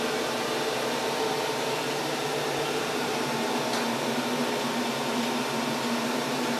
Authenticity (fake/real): real